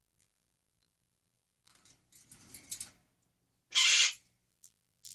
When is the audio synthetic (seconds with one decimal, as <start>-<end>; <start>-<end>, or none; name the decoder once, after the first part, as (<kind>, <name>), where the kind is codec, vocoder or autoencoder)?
0.0-1.7 (vocoder, BigVGAN v2); 4.5-5.1